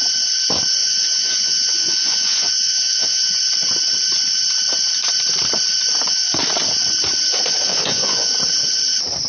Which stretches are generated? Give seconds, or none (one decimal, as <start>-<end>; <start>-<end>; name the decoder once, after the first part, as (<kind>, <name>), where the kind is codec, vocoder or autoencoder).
0.8-3.4 (vocoder, Vocos); 7.7-8.3